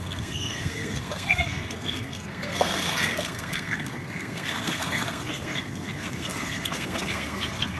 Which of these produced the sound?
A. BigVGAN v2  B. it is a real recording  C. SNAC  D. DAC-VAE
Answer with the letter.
C